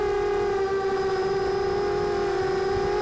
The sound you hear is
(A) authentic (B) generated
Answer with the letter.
A